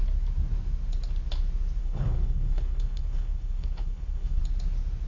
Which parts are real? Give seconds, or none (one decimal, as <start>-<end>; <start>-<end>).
0.0-1.8; 4.4-5.1